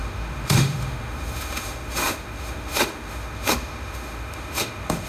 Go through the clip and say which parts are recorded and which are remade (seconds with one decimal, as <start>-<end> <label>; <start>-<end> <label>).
0.0-5.1 remade